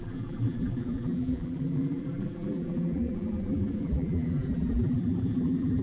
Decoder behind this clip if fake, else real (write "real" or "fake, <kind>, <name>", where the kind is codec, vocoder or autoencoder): fake, vocoder, BigVGAN v2